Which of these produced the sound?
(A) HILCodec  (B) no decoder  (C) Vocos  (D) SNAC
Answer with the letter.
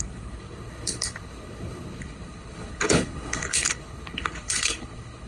A